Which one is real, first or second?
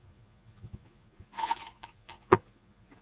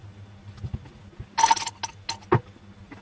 second